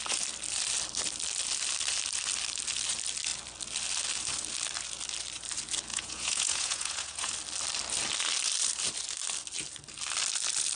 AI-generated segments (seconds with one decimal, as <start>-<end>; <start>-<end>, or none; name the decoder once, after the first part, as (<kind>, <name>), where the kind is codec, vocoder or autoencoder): 5.9-7.3 (vocoder, Vocos)